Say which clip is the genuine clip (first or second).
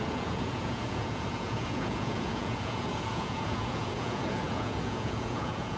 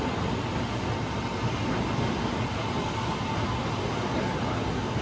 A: second